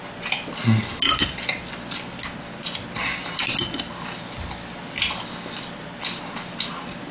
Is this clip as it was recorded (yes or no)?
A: yes